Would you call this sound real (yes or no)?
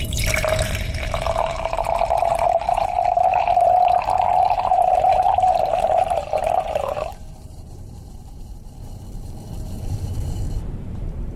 no